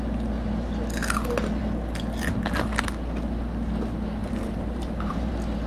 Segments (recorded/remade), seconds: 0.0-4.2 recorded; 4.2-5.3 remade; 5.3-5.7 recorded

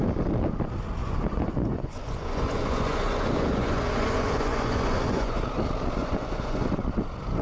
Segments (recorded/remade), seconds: 0.0-1.0 recorded; 1.0-5.4 remade; 5.4-6.0 recorded; 6.0-6.8 remade; 6.8-7.4 recorded

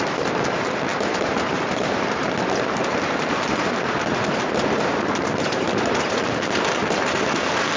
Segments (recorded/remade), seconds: 0.0-6.8 remade; 6.8-7.8 recorded

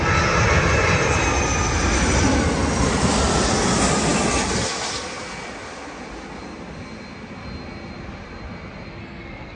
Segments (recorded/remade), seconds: 0.0-9.0 recorded; 9.0-9.6 remade

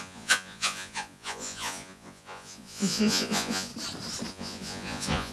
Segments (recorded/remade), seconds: 0.0-3.7 remade; 3.7-4.3 recorded; 4.3-5.3 remade

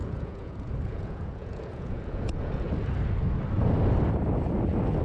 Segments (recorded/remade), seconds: 0.0-2.6 remade; 2.6-5.0 recorded